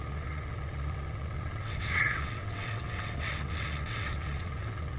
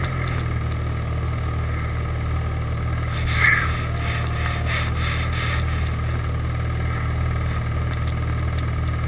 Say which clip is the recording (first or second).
second